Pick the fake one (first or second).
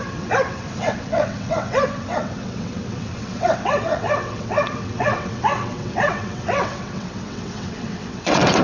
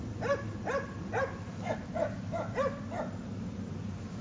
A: first